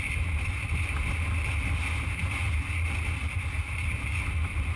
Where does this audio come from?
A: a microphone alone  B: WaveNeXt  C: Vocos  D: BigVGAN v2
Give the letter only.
A